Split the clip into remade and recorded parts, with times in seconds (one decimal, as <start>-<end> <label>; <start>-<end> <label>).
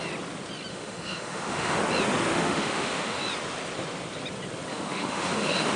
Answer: 0.0-0.7 recorded; 0.7-1.8 remade; 1.8-2.3 recorded; 2.3-3.2 remade; 3.2-4.7 recorded; 4.7-5.8 remade